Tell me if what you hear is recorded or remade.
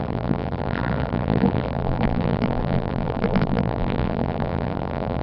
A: remade